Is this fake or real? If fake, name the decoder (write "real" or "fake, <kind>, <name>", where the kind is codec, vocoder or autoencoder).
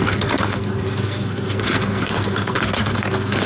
fake, codec, SNAC